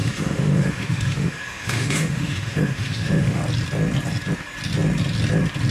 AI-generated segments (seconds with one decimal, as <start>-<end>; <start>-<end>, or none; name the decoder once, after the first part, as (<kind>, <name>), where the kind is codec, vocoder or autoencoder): 0.0-3.4 (autoencoder, DAC-VAE)